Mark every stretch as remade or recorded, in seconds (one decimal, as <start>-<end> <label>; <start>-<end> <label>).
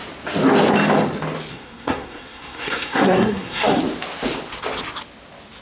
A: 0.0-1.5 recorded; 1.5-3.8 remade; 3.8-5.6 recorded